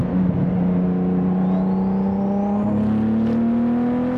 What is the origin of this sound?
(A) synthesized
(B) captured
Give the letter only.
B